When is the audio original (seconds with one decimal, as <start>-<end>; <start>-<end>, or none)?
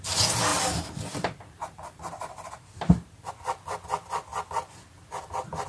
0.0-0.5; 3.3-5.7